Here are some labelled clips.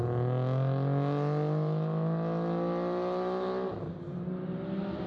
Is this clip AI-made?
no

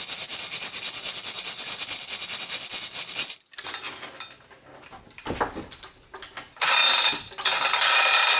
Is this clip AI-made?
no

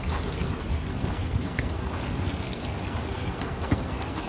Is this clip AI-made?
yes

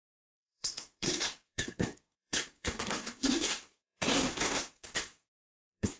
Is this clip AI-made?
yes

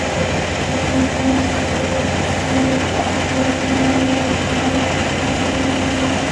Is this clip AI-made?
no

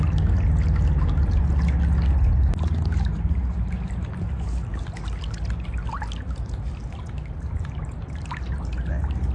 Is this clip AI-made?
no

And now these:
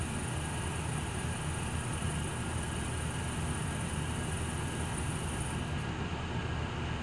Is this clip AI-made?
no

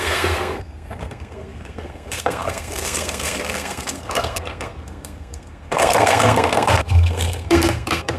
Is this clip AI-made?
yes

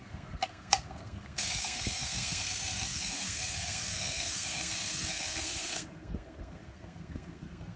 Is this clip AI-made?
yes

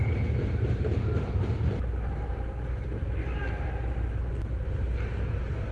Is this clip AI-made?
no